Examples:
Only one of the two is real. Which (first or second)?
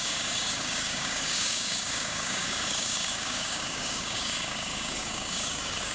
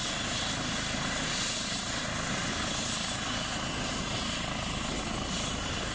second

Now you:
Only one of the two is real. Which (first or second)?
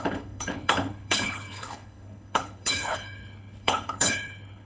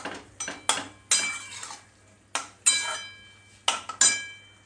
second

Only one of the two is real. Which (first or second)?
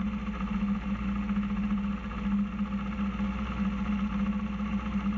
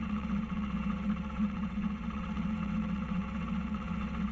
first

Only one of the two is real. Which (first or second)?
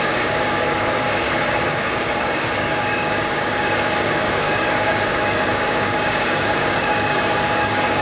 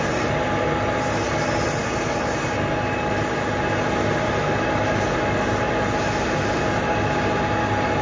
second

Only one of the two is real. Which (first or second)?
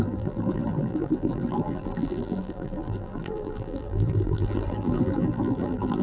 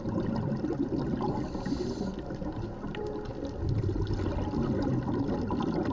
second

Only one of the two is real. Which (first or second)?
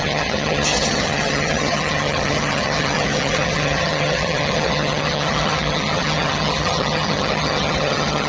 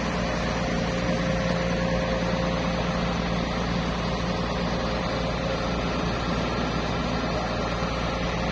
second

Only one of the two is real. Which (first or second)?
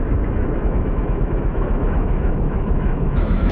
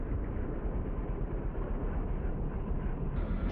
second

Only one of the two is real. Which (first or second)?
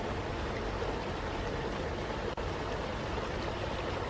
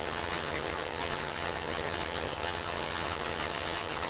first